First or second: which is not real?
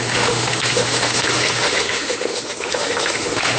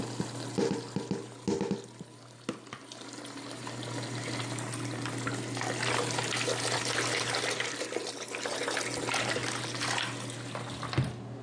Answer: first